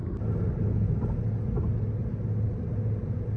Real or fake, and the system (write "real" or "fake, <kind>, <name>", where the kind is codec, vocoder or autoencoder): real